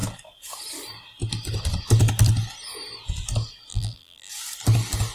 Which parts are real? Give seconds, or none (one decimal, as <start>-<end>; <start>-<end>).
0.0-3.7; 4.3-5.1